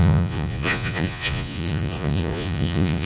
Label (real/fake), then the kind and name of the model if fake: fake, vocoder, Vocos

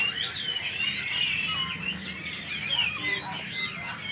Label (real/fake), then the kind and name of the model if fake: real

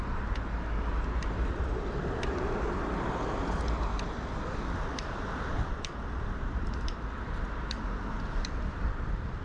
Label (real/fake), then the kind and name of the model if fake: fake, vocoder, BigVGAN v2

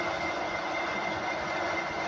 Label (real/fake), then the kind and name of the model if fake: fake, vocoder, Vocos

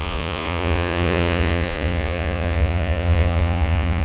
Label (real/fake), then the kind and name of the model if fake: fake, vocoder, Vocos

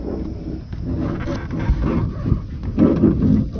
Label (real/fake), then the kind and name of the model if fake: real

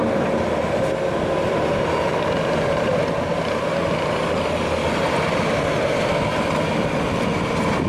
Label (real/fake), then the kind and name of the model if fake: real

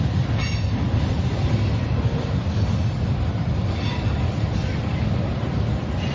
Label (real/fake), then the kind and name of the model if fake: real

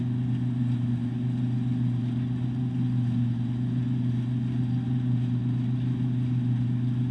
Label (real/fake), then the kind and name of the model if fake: real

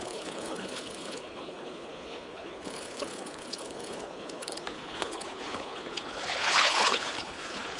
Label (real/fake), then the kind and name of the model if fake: fake, codec, HILCodec